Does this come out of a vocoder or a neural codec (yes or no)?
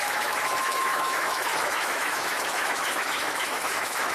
yes